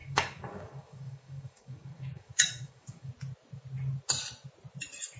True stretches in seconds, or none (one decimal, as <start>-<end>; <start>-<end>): 3.1-5.2